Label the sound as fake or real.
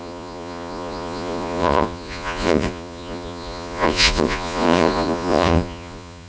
fake